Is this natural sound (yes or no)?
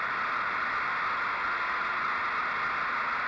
yes